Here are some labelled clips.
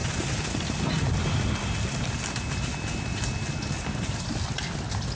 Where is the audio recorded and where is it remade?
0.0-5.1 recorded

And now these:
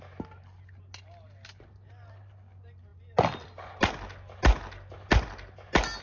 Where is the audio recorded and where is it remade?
0.0-6.0 recorded

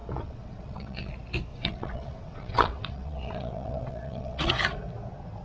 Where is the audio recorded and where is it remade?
0.0-1.1 remade; 1.1-1.5 recorded; 1.5-4.5 remade; 4.5-5.4 recorded

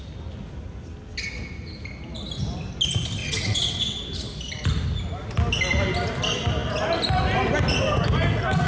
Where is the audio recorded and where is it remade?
0.0-3.2 recorded; 3.2-4.0 remade; 4.0-8.7 recorded

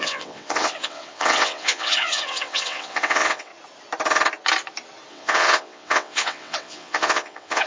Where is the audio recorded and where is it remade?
0.0-3.5 remade; 3.5-5.1 recorded; 5.1-7.7 remade

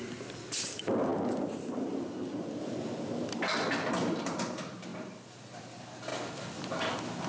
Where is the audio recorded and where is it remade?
0.0-7.3 recorded